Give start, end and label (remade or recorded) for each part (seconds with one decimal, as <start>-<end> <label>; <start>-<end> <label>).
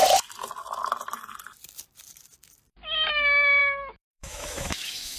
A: 0.0-3.1 recorded; 3.1-5.2 remade